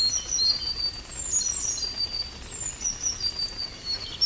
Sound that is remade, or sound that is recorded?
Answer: recorded